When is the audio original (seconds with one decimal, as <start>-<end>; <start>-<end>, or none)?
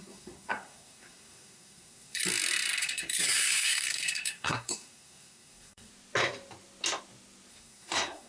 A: 2.2-2.8; 5.9-7.5